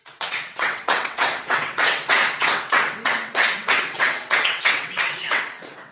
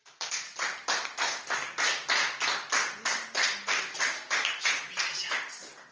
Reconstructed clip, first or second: first